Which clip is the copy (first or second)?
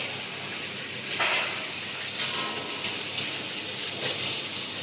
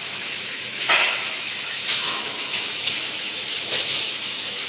second